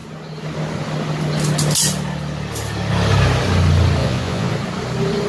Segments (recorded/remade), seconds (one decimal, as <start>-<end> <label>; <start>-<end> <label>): 0.0-4.0 recorded; 4.0-4.5 remade; 4.5-5.3 recorded